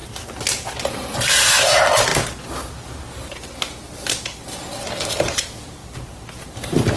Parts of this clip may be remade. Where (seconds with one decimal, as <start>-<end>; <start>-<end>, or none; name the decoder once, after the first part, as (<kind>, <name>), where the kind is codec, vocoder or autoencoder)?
1.6-2.1 (vocoder, BigVGAN v2); 5.1-5.8; 6.4-7.0